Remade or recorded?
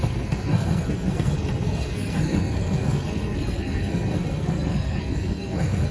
remade